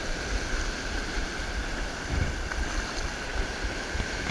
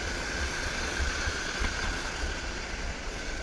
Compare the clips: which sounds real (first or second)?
first